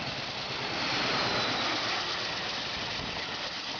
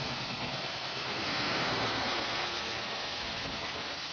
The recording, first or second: first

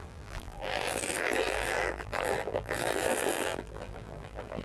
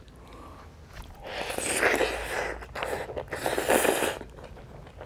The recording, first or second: second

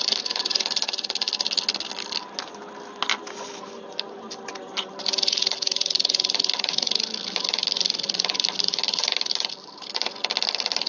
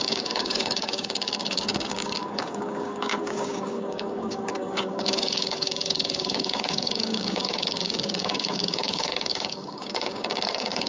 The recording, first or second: first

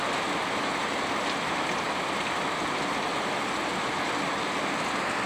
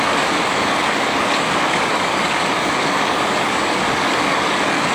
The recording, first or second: first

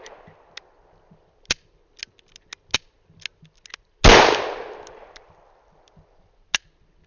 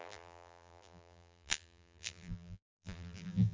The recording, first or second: first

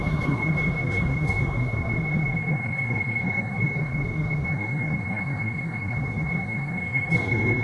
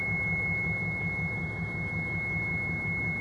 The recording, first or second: second